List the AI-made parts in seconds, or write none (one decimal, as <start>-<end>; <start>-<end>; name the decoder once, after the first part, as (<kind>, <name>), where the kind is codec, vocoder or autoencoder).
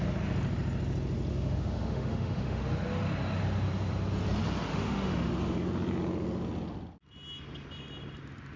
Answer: 1.3-2.6 (autoencoder, DAC-VAE); 4.7-5.3